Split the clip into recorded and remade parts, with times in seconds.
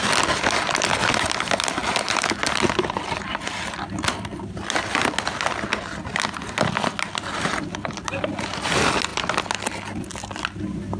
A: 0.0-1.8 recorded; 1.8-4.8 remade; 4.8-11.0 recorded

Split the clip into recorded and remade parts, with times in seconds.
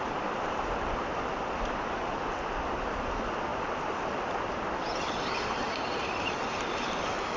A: 0.0-3.5 recorded; 3.5-5.7 remade; 5.7-7.4 recorded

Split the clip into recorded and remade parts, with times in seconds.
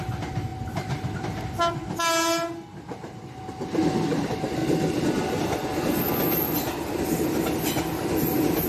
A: 0.0-8.7 recorded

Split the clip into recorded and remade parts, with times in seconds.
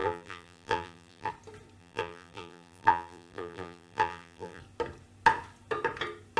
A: 0.0-1.3 remade; 1.3-1.8 recorded; 1.8-4.6 remade; 4.6-6.4 recorded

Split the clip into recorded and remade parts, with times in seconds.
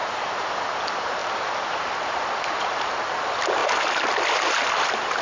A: 0.0-0.5 remade; 0.5-1.2 recorded; 1.2-2.8 remade; 2.8-5.2 recorded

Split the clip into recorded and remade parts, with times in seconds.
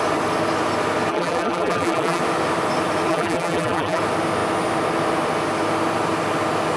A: 0.0-1.1 recorded; 1.1-2.2 remade; 2.2-3.1 recorded; 3.1-4.0 remade; 4.0-6.8 recorded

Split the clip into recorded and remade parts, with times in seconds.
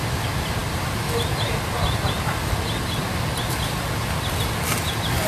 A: 0.0-5.3 recorded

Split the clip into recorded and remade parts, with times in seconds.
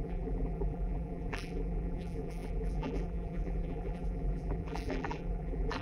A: 0.0-5.8 remade